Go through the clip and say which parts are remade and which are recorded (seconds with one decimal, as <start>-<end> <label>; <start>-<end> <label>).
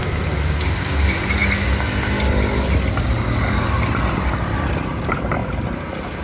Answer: 0.0-1.4 remade; 1.4-3.7 recorded; 3.7-5.4 remade; 5.4-6.2 recorded